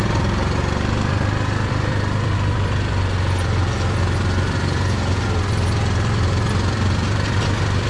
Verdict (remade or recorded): remade